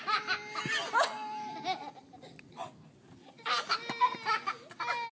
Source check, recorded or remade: recorded